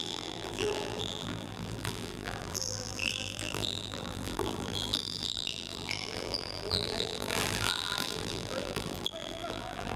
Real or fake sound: fake